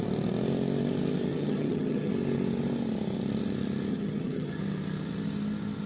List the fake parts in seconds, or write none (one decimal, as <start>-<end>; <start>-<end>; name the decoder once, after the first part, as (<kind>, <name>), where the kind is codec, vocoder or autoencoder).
1.3-2.1 (vocoder, HiFi-GAN); 3.9-4.6